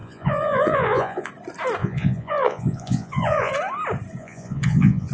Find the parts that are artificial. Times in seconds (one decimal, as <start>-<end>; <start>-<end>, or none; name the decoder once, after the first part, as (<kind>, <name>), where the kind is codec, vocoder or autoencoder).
0.0-1.3 (vocoder, Vocos); 1.8-3.5; 4.2-5.1